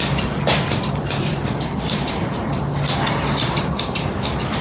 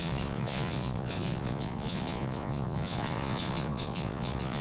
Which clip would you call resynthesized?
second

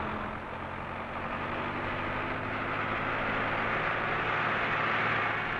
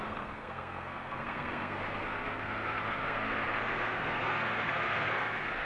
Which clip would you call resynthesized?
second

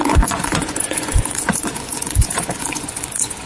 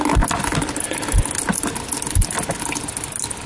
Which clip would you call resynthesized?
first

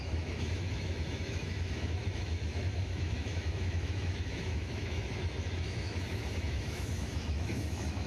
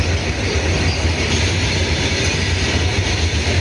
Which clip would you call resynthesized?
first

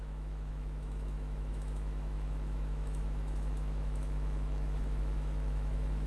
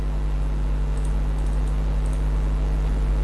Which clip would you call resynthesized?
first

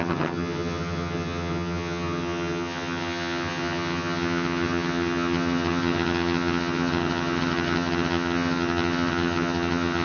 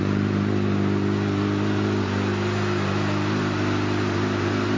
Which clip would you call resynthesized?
first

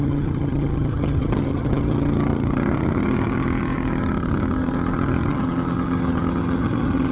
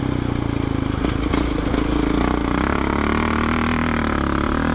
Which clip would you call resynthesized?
first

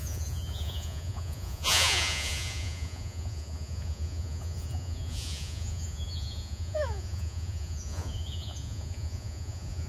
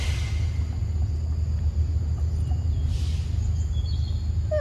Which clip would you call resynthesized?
first